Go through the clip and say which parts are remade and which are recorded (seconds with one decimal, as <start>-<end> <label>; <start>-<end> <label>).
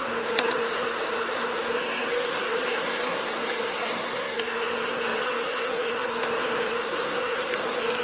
0.0-8.0 remade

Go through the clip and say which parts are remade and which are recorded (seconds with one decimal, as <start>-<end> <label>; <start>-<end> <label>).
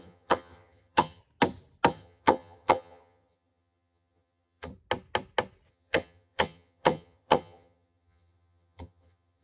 0.0-1.2 remade; 1.2-1.9 recorded; 1.9-4.7 remade; 4.7-5.7 recorded; 5.7-9.4 remade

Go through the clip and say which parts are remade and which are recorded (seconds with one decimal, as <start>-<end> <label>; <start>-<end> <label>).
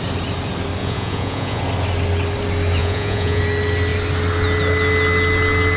0.0-0.8 recorded; 0.8-1.6 remade; 1.6-2.8 recorded; 2.8-3.4 remade; 3.4-5.8 recorded